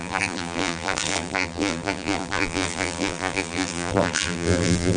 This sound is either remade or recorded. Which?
remade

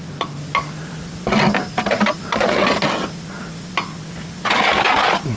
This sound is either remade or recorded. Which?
recorded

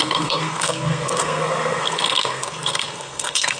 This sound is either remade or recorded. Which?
remade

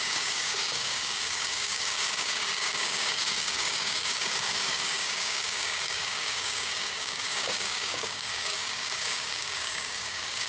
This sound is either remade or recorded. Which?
remade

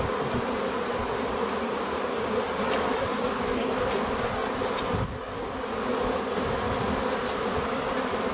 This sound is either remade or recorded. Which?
recorded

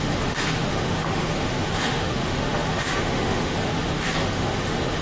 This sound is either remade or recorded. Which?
remade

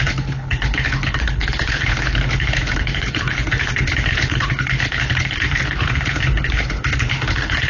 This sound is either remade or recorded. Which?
remade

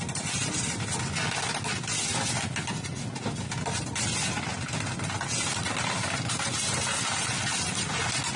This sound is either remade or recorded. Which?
recorded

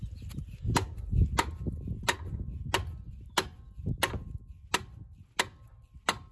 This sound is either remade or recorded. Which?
recorded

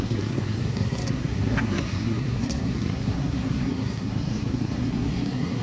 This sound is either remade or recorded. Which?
remade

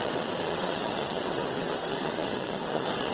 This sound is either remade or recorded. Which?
remade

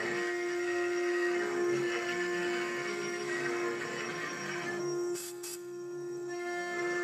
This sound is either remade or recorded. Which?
remade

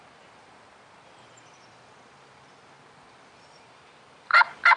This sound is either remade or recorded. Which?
remade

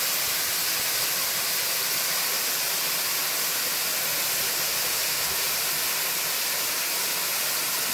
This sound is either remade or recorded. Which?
recorded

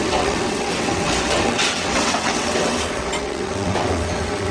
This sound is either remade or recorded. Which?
remade